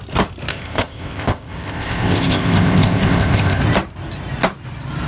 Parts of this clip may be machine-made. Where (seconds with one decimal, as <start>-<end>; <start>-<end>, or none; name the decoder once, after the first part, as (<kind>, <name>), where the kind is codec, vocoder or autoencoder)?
0.5-3.6 (codec, ZipCodec)